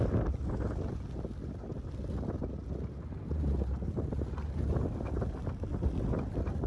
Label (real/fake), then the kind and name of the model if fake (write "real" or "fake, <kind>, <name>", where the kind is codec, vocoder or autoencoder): real